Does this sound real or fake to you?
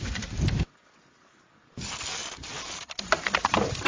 real